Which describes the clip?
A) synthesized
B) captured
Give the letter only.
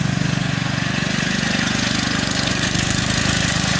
A